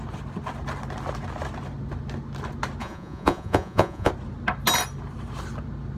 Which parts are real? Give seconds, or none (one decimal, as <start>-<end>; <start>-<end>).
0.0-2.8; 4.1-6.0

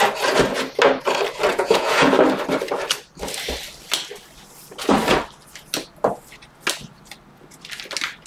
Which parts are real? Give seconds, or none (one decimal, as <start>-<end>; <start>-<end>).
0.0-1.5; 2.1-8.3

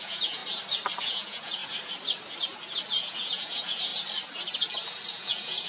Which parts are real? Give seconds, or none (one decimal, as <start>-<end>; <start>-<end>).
0.4-1.0; 1.6-2.9; 3.9-5.1

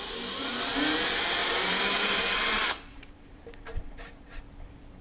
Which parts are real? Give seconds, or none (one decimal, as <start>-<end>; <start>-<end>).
0.0-1.4; 4.4-5.0